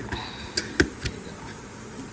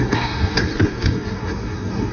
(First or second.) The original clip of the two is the first